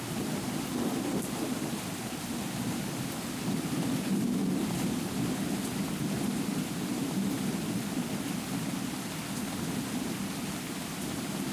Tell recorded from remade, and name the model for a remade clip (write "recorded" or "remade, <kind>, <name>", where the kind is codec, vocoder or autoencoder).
recorded